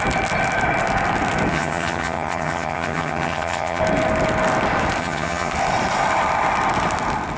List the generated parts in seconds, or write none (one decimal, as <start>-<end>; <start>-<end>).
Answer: 1.5-3.8; 5.0-5.5